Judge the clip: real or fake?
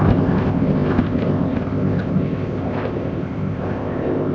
fake